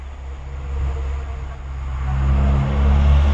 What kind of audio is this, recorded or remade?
recorded